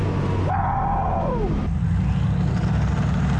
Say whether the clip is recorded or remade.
recorded